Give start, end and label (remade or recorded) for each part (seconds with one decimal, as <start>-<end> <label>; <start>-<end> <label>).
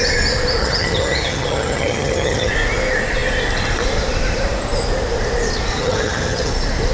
0.0-0.6 recorded; 0.6-2.5 remade; 2.5-5.7 recorded; 5.7-6.5 remade; 6.5-6.9 recorded